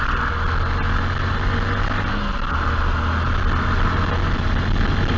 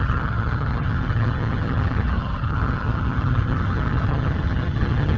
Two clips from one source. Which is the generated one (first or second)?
second